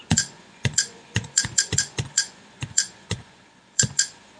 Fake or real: fake